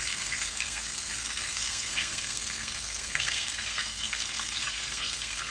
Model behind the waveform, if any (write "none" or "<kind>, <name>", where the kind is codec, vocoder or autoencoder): codec, SNAC